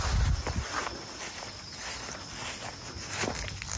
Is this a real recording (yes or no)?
yes